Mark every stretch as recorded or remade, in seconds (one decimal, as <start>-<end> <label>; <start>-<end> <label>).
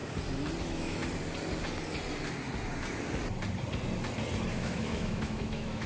0.0-0.6 recorded; 0.6-1.0 remade; 1.0-4.5 recorded; 4.5-5.9 remade